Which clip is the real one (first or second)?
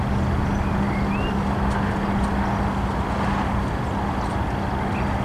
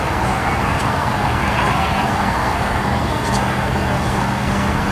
first